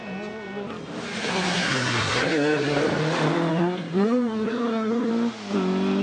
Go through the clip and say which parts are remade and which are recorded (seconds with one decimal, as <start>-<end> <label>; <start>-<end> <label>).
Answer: 0.0-1.2 recorded; 1.2-2.8 remade; 2.8-3.5 recorded; 3.5-5.1 remade; 5.1-6.0 recorded

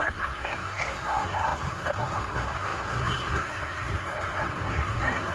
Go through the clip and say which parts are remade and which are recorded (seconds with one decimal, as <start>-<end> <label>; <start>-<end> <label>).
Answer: 0.0-5.3 remade